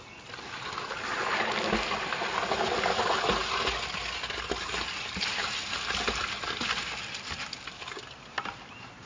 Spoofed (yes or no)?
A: no